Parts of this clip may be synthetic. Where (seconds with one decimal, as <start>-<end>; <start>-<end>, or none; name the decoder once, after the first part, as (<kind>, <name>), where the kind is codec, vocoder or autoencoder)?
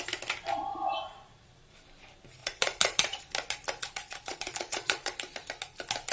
2.4-3.2 (vocoder, Vocos); 4.0-5.1